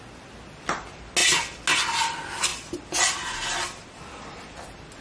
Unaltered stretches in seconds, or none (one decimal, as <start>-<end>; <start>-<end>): 0.0-5.0